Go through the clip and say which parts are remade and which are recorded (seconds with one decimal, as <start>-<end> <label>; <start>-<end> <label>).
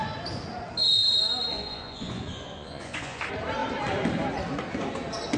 0.0-1.5 recorded; 1.5-3.2 remade; 3.2-5.4 recorded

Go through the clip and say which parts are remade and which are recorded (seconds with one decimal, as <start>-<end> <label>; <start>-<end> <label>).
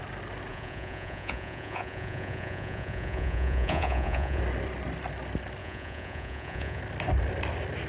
0.0-0.5 recorded; 0.5-4.4 remade; 4.4-5.6 recorded; 5.6-6.8 remade; 6.8-7.9 recorded